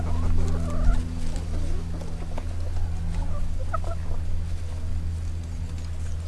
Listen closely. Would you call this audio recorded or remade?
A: recorded